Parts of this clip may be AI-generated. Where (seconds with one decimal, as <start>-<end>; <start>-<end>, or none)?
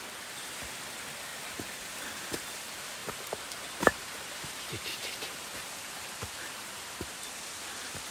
1.3-2.0; 3.0-6.8